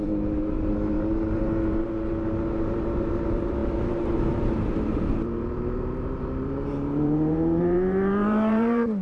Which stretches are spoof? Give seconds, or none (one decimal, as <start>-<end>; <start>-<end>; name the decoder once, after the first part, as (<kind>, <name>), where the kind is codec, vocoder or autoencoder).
0.0-9.0 (vocoder, BigVGAN v2)